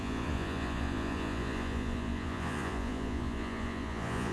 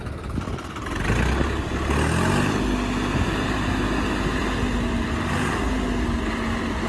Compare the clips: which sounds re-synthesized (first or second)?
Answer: first